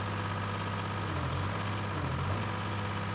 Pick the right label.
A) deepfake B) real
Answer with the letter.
B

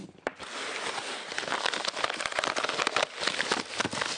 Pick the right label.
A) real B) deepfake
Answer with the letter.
A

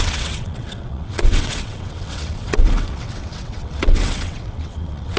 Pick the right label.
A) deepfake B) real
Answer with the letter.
A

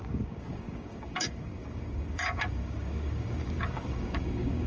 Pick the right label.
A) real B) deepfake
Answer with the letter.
B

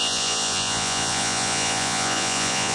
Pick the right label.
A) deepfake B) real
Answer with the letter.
A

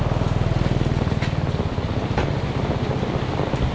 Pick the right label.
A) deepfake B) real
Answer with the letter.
B